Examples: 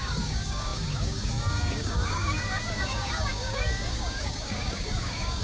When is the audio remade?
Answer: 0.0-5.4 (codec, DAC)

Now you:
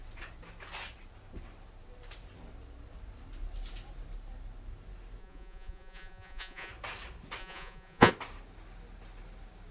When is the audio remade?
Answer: 5.2-6.7 (vocoder, Vocos); 7.4-8.1

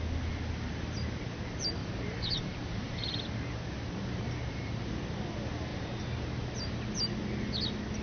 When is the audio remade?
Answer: 1.8-4.9 (vocoder, BigVGAN v2); 5.7-6.7

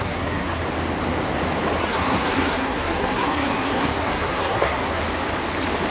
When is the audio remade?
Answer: 0.0-0.6 (codec, SNAC); 1.8-5.0

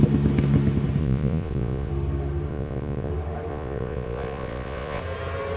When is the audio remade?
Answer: 1.0-1.9 (vocoder, Vocos); 2.5-3.1; 3.5-5.0